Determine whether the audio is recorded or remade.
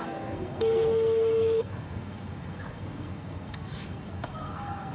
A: remade